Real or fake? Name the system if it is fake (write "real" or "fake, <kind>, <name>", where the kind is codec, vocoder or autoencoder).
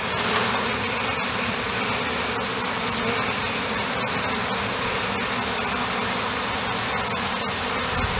real